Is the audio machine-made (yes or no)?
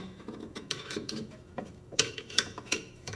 yes